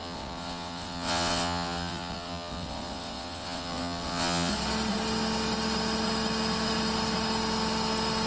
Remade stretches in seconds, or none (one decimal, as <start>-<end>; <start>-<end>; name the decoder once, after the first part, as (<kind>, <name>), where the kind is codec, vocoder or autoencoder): 0.0-4.5 (vocoder, WaveNeXt)